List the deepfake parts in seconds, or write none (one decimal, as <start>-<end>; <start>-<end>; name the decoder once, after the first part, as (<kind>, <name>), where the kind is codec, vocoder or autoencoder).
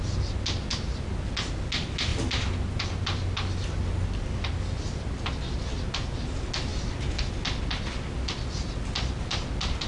none